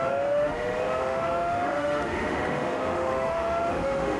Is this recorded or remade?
remade